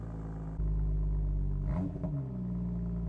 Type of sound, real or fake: real